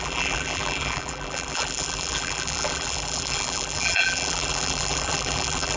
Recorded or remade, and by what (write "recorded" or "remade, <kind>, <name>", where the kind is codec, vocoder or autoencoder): remade, vocoder, BigVGAN v2